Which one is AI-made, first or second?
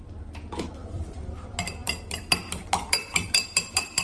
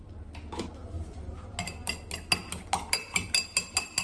first